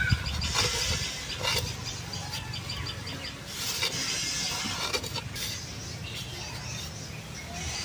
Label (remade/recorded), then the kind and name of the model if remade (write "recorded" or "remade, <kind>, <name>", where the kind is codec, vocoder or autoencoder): recorded